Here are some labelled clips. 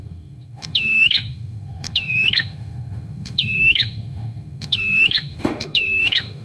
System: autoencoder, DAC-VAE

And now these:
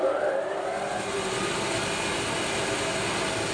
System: none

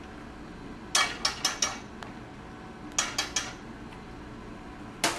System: none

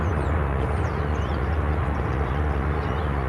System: vocoder, Vocos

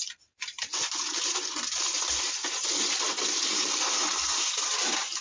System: none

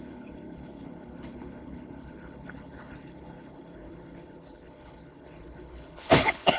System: codec, HILCodec